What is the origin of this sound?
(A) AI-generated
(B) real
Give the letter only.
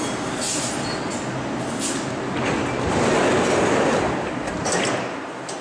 B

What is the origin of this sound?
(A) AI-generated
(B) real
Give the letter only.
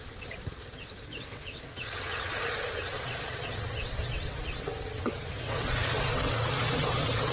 A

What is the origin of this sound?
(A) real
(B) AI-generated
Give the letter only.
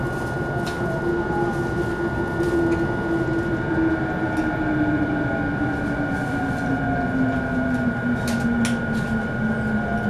A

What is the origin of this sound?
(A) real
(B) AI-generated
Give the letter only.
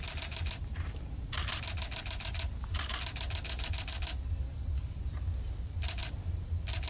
A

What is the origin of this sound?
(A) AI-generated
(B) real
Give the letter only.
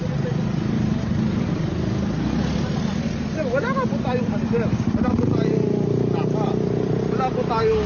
B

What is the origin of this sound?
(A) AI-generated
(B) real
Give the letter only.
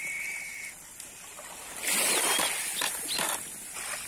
B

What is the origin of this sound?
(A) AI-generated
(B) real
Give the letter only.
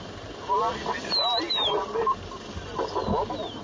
B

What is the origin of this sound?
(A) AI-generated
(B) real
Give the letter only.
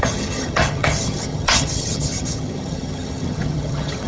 A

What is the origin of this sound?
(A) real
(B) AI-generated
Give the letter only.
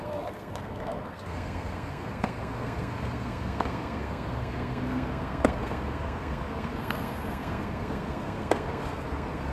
B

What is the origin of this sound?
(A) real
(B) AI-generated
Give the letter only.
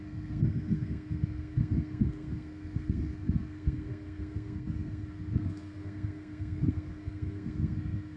B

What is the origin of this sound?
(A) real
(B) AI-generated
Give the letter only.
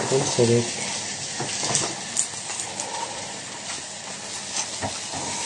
A